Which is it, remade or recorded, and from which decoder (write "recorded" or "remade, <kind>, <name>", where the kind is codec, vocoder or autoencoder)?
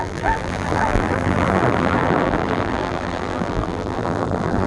remade, vocoder, BigVGAN v2